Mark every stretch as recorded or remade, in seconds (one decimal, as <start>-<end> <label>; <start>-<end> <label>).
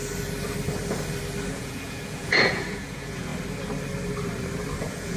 0.0-1.5 recorded; 1.5-3.3 remade; 3.3-4.8 recorded; 4.8-5.2 remade